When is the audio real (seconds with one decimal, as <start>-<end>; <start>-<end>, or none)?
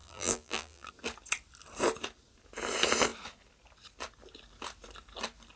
0.9-5.6